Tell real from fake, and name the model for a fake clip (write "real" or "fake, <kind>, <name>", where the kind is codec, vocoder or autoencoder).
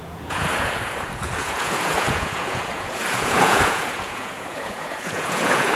fake, vocoder, Vocos